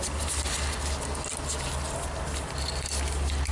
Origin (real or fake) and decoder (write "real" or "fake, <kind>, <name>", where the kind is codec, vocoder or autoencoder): real